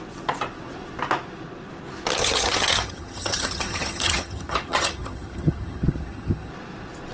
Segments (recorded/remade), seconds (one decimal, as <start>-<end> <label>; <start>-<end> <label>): 0.0-2.2 recorded; 2.2-6.5 remade; 6.5-7.1 recorded